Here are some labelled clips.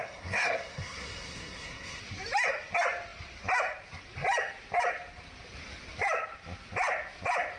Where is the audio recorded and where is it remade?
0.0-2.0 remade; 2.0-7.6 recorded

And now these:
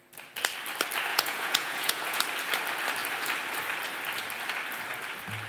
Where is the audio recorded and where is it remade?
0.0-1.1 recorded; 1.1-2.2 remade; 2.2-5.5 recorded

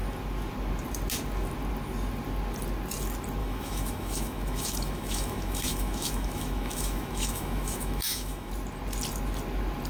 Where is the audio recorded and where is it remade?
0.0-3.4 recorded; 3.4-8.5 remade; 8.5-9.9 recorded